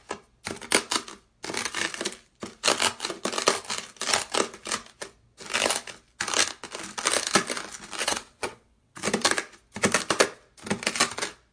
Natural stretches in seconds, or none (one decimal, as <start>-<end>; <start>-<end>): 0.0-8.0; 9.0-11.5